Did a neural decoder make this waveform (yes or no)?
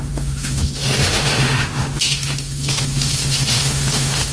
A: yes